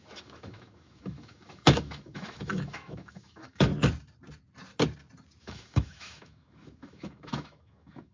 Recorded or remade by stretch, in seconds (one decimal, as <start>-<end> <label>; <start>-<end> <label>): 0.0-3.7 remade; 3.7-5.4 recorded; 5.4-8.1 remade